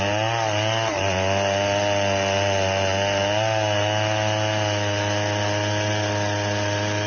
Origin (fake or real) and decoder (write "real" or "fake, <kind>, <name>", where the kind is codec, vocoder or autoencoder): real